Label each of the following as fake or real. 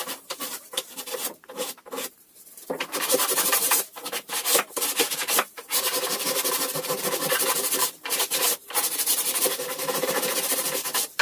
fake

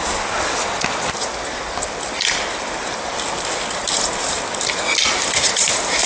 real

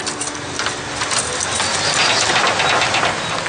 real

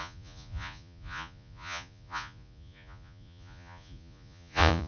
fake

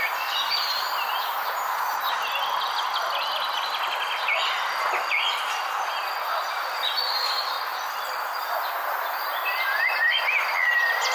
real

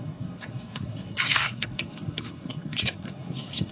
fake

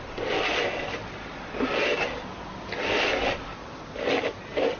real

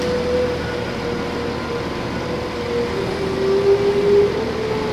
real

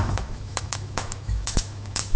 fake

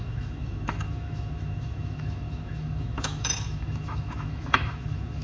fake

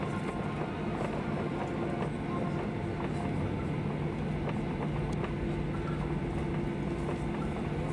real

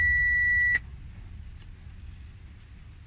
real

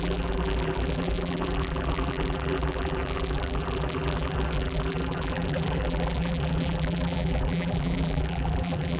fake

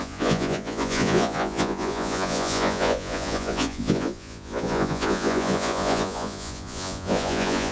fake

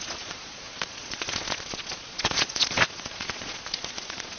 fake